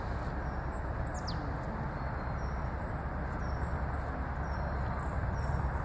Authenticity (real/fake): real